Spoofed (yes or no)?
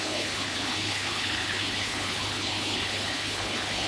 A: yes